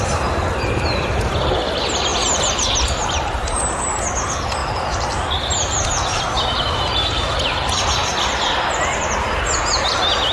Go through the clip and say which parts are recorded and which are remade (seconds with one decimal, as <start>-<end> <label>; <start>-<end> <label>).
0.0-2.1 recorded; 2.1-3.9 remade; 3.9-4.6 recorded; 4.6-6.1 remade; 6.1-10.3 recorded